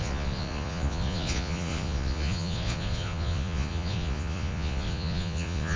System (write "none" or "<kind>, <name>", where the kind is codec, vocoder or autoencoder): vocoder, Vocos